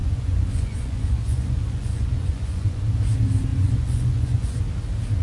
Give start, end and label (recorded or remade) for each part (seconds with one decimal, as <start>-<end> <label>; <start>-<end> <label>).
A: 0.0-2.8 remade; 2.8-3.5 recorded; 3.5-4.6 remade; 4.6-5.2 recorded